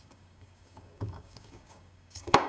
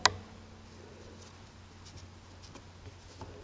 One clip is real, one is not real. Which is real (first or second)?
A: second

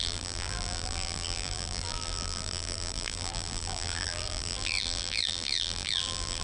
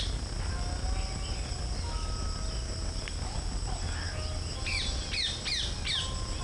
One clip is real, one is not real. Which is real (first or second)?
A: second